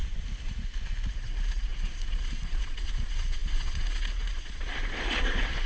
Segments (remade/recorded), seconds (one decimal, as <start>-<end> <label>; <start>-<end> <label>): 0.0-1.1 recorded; 1.1-5.7 remade